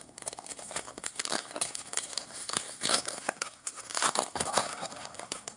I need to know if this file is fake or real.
fake